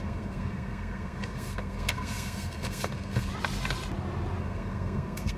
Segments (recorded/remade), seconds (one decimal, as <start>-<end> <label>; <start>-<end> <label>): 0.0-3.3 remade; 3.3-4.4 recorded; 4.4-5.4 remade